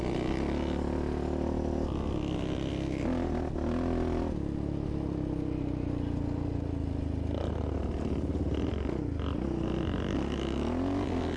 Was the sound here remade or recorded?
recorded